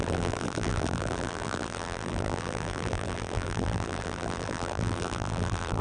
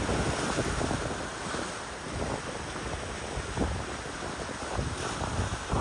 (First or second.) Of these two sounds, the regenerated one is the first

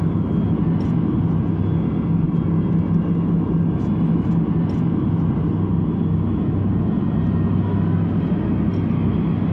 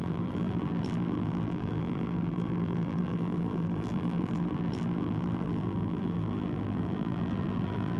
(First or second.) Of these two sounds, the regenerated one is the second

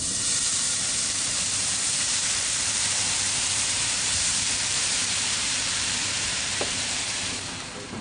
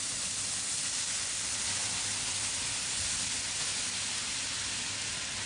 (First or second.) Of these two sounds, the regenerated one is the first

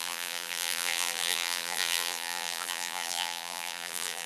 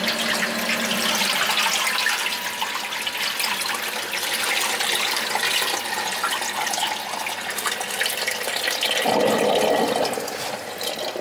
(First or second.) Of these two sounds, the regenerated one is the first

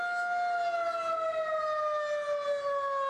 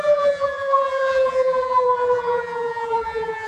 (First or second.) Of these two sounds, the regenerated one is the second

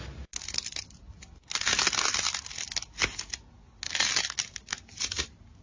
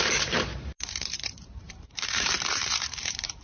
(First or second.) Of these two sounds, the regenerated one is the second